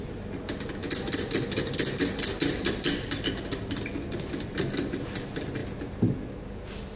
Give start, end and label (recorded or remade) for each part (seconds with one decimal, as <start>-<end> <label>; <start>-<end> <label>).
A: 0.0-7.0 recorded